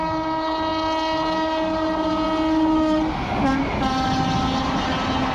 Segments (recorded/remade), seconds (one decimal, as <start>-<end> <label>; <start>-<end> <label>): 0.0-5.3 recorded